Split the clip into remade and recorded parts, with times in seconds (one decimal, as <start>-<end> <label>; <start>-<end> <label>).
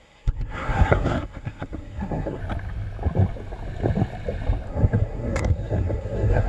0.0-2.4 remade; 2.4-4.7 recorded; 4.7-6.5 remade